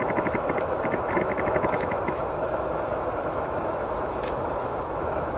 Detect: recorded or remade remade